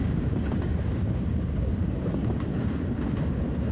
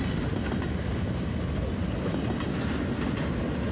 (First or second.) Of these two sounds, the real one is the second